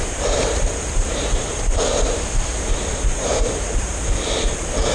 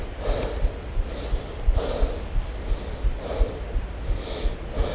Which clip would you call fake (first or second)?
first